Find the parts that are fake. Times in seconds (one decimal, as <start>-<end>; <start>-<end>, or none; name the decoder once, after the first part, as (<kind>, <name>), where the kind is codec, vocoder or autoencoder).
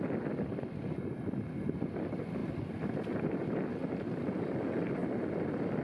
2.4-3.7 (vocoder, BigVGAN v2); 5.0-5.8